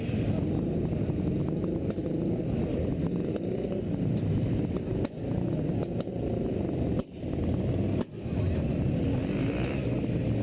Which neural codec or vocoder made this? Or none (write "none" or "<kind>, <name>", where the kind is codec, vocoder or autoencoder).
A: none